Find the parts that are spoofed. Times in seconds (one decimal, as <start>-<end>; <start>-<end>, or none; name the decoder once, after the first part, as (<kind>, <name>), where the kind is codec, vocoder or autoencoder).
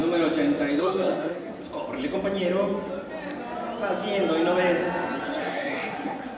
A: 0.8-1.6 (codec, SNAC); 5.4-6.4